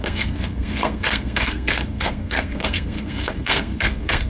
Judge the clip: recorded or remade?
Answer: remade